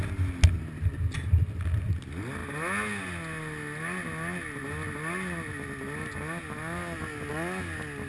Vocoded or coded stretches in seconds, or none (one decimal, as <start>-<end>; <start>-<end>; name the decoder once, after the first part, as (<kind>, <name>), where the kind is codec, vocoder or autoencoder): none